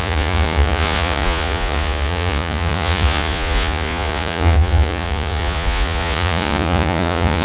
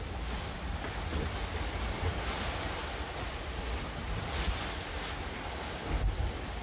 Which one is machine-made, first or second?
first